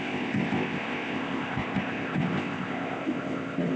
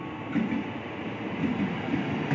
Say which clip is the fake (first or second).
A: first